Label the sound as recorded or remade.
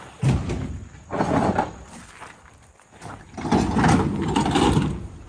recorded